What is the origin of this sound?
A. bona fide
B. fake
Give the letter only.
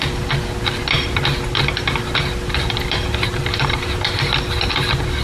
B